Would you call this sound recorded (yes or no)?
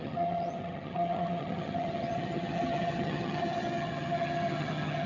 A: no